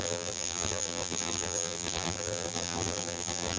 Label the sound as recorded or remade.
remade